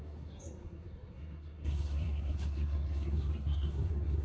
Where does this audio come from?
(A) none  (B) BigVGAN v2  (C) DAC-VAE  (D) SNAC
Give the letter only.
D